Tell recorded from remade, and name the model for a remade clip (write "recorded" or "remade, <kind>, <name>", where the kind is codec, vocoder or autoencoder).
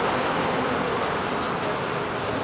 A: remade, vocoder, BigVGAN v2